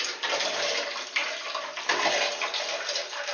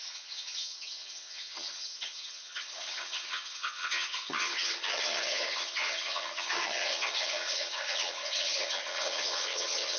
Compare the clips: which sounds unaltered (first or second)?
first